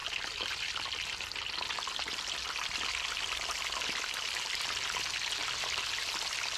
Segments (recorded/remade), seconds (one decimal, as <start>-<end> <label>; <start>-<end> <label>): 0.0-6.6 recorded